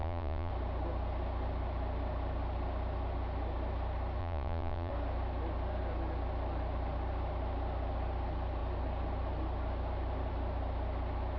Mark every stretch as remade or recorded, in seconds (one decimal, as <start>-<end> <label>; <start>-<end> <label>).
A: 0.0-0.5 remade; 0.5-4.2 recorded; 4.2-4.9 remade; 4.9-11.4 recorded